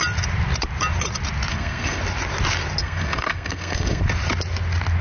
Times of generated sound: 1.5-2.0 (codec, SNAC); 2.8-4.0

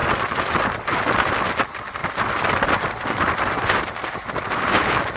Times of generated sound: 2.0-5.2 (vocoder, BigVGAN v2)

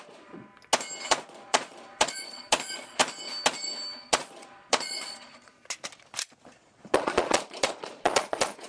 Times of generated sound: 0.0-0.5 (vocoder, Vocos); 1.1-3.0; 4.0-5.5; 6.5-8.7